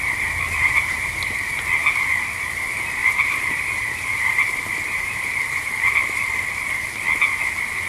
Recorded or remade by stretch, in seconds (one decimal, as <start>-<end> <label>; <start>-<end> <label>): 0.0-0.6 recorded; 0.6-1.1 remade; 1.1-3.0 recorded; 3.0-5.9 remade; 5.9-7.9 recorded